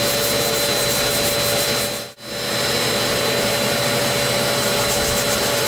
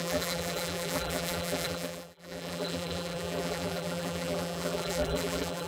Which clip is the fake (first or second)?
second